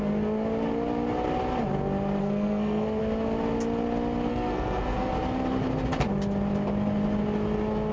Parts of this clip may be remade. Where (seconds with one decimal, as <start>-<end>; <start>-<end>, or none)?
2.2-3.0; 4.3-5.1